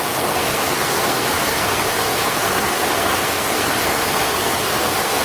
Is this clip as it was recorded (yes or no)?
no